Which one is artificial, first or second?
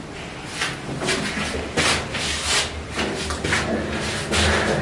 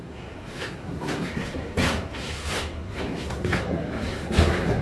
second